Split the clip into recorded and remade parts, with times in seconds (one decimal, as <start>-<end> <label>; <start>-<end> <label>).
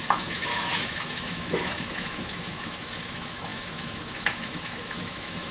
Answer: 0.0-5.5 remade